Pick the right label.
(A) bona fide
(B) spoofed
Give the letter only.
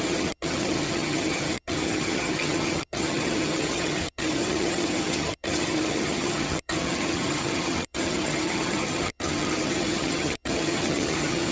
B